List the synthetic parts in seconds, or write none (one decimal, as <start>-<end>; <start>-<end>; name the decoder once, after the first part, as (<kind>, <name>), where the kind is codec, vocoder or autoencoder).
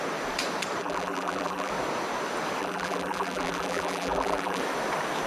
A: 0.8-1.7 (vocoder, BigVGAN v2); 2.6-4.6